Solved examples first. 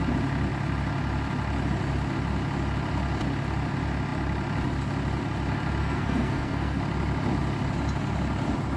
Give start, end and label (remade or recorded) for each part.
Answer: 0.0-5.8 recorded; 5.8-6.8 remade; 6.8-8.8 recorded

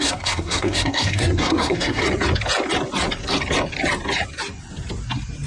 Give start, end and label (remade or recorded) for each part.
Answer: 0.0-2.0 remade; 2.0-5.5 recorded

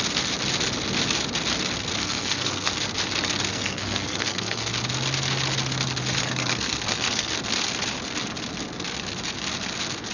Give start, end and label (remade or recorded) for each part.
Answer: 0.0-2.0 recorded; 2.0-2.7 remade; 2.7-3.5 recorded; 3.5-4.7 remade; 4.7-6.2 recorded; 6.2-7.3 remade; 7.3-10.1 recorded

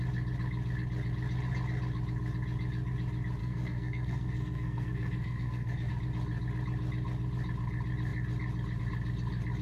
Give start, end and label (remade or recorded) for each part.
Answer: 0.0-3.4 recorded; 3.4-5.9 remade; 5.9-9.6 recorded

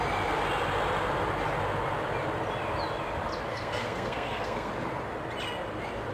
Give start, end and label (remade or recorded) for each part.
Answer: 0.0-3.5 recorded; 3.5-4.7 remade; 4.7-6.1 recorded

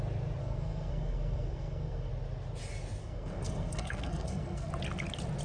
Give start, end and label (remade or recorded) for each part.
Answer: 0.0-0.4 recorded; 0.4-2.1 remade; 2.1-3.0 recorded; 3.0-4.7 remade; 4.7-5.4 recorded

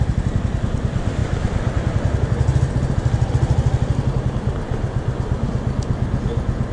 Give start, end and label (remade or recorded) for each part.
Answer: 0.0-6.7 recorded